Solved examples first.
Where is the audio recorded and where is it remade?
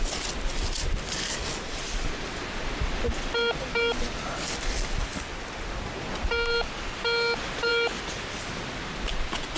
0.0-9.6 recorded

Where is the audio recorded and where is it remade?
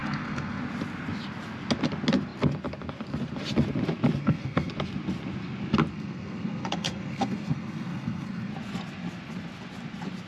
0.0-0.6 remade; 0.6-4.2 recorded; 4.2-4.7 remade; 4.7-5.9 recorded; 5.9-8.5 remade; 8.5-10.3 recorded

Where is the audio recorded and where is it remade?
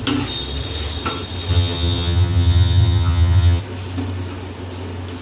0.0-1.5 recorded; 1.5-3.6 remade; 3.6-5.2 recorded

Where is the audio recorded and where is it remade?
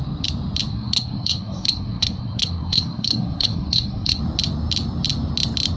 0.0-0.7 recorded; 0.7-4.2 remade; 4.2-5.8 recorded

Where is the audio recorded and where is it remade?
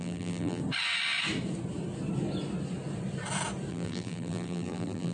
0.0-0.6 remade; 0.6-3.7 recorded; 3.7-5.1 remade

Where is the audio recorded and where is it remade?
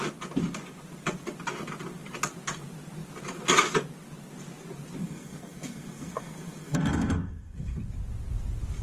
0.0-5.0 recorded; 5.0-7.8 remade; 7.8-8.8 recorded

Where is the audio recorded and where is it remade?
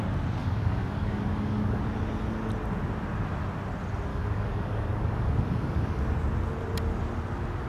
0.0-0.4 recorded; 0.4-1.8 remade; 1.8-4.1 recorded; 4.1-6.0 remade; 6.0-7.7 recorded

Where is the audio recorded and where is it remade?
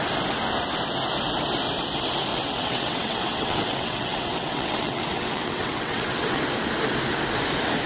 0.0-2.3 recorded; 2.3-6.4 remade; 6.4-7.9 recorded